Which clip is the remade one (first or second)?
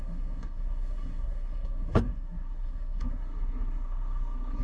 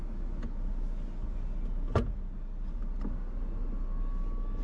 first